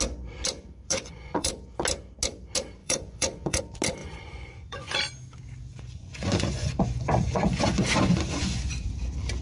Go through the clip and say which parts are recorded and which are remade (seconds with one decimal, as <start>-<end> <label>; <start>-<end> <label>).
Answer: 0.0-0.9 recorded; 0.9-1.5 remade; 1.5-2.8 recorded; 2.8-3.6 remade; 3.6-4.0 recorded; 4.0-5.0 remade; 5.0-5.7 recorded; 5.7-8.8 remade; 8.8-9.4 recorded

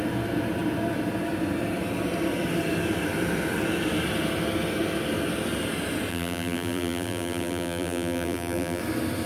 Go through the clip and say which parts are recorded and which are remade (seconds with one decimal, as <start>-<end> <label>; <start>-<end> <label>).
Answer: 0.0-6.1 recorded; 6.1-8.8 remade; 8.8-9.3 recorded

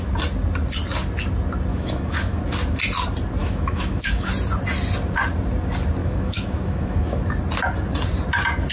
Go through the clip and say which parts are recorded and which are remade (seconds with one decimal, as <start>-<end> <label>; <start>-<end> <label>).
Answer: 0.0-1.7 recorded; 1.7-2.4 remade; 2.4-3.4 recorded; 3.4-4.3 remade; 4.3-6.0 recorded; 6.0-7.2 remade; 7.2-8.7 recorded

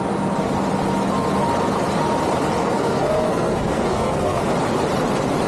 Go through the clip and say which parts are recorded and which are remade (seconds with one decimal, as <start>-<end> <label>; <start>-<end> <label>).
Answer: 0.0-2.6 recorded; 2.6-4.4 remade; 4.4-5.5 recorded

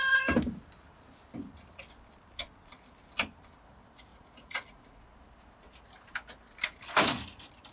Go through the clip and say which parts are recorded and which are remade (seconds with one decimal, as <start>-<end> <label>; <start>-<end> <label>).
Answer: 0.0-4.1 recorded; 4.1-5.0 remade; 5.0-7.7 recorded

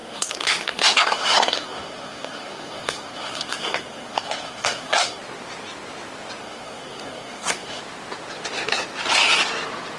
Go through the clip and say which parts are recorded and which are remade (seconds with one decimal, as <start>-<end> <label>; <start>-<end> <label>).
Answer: 0.0-5.2 remade; 5.2-6.4 recorded; 6.4-7.8 remade; 7.8-10.0 recorded

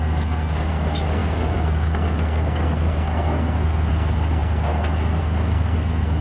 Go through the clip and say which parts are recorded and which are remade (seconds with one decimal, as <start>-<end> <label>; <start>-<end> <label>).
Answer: 0.0-6.2 remade

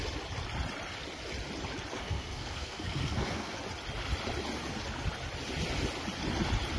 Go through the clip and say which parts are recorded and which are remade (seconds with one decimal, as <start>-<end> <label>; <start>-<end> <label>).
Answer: 0.0-2.0 recorded; 2.0-3.6 remade; 3.6-6.8 recorded